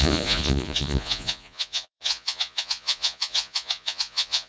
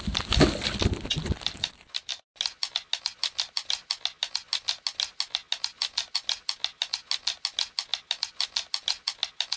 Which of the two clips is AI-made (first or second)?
first